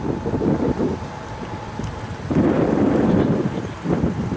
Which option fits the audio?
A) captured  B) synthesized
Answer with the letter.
A